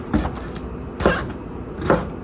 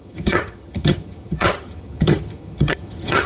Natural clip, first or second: first